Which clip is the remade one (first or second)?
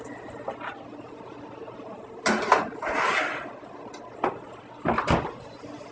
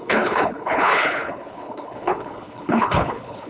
second